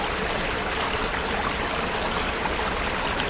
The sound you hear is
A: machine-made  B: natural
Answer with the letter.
B